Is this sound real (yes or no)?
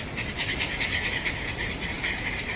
no